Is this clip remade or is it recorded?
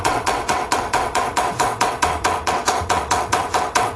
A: remade